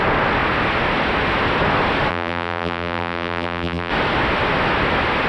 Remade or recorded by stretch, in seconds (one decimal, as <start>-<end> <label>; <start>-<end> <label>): 0.0-2.1 recorded; 2.1-3.9 remade; 3.9-5.3 recorded